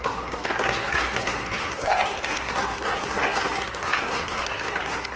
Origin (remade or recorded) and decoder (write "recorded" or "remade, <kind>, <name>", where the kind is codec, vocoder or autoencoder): remade, codec, SNAC